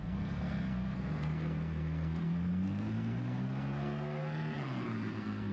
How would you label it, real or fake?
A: fake